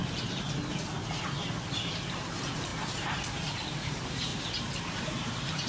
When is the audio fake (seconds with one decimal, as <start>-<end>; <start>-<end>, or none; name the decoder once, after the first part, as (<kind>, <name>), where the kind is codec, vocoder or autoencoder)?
2.2-4.3 (vocoder, BigVGAN v2); 4.8-5.7